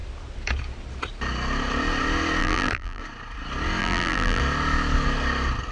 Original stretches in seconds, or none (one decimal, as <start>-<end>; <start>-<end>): 0.0-2.4; 3.0-3.8; 4.4-5.7